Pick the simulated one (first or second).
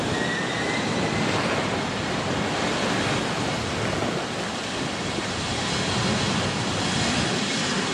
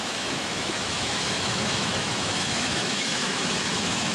second